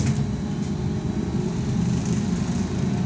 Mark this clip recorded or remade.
recorded